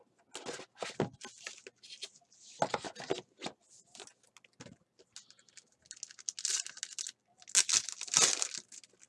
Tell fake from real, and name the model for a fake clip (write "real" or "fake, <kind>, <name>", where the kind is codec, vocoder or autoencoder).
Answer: real